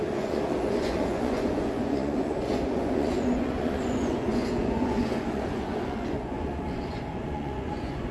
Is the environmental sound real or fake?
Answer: fake